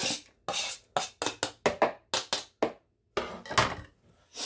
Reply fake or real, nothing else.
real